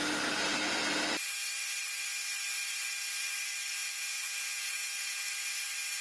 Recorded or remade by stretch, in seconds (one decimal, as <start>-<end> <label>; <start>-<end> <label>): 0.0-3.8 recorded; 3.8-5.2 remade; 5.2-6.0 recorded